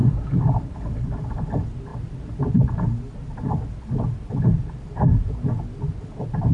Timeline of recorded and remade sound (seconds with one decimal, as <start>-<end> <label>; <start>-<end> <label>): 0.0-6.5 recorded

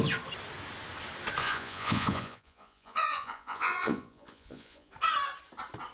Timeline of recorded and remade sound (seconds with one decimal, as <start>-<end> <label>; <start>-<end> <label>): 0.0-1.4 recorded; 1.4-4.9 remade; 4.9-5.9 recorded